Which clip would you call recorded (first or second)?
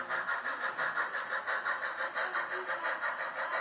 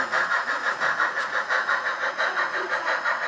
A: first